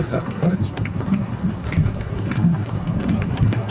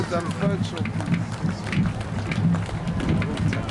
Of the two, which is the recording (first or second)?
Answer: second